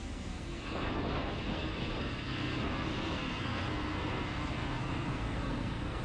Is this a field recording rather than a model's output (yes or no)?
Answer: no